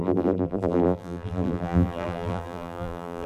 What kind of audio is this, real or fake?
fake